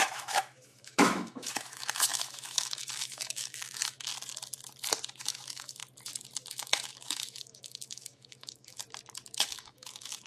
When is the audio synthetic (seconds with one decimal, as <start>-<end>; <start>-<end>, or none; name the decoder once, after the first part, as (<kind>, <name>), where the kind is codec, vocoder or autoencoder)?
0.0-4.1 (autoencoder, DAC-VAE); 5.2-5.8; 6.5-8.8; 9.4-10.3